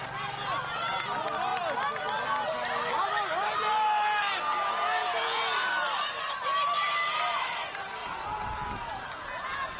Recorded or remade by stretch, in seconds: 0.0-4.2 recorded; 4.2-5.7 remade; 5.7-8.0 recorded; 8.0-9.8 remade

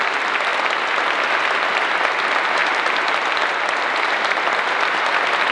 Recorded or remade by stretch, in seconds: 0.0-5.5 recorded

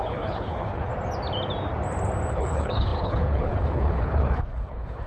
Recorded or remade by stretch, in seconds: 0.0-0.9 remade; 0.9-2.3 recorded; 2.3-5.1 remade